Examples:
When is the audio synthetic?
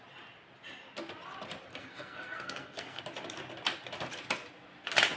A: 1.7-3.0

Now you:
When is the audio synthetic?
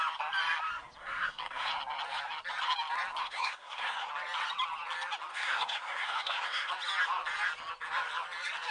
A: 1.0-1.7; 3.2-4.1; 5.3-6.7